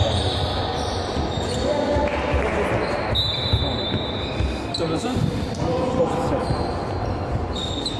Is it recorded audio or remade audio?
recorded